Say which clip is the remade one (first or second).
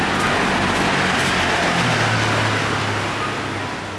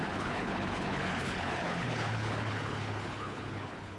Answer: second